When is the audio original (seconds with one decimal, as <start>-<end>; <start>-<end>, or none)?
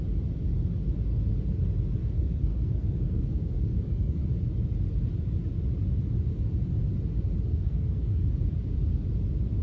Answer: 0.0-2.0; 4.2-7.5; 8.3-9.6